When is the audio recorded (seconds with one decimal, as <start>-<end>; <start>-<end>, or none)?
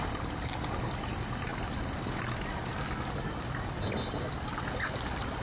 0.0-5.4